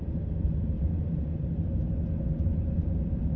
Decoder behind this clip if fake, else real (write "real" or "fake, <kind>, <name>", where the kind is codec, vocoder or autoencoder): real